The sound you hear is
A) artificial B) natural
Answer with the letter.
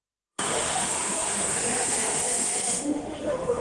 A